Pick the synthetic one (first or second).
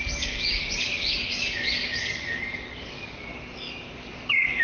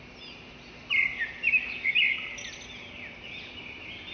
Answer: first